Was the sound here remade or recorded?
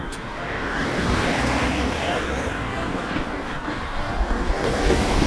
remade